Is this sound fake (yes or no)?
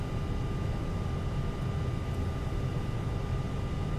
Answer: no